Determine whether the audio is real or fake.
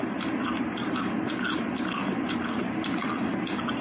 real